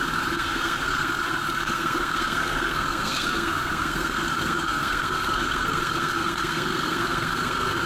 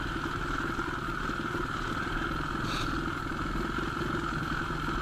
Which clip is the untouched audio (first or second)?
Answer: second